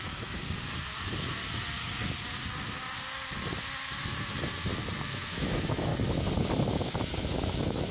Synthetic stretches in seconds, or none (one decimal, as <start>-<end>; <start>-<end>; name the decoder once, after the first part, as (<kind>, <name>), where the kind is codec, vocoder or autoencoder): 0.0-0.4 (autoencoder, DAC-VAE); 5.0-5.9; 6.7-7.9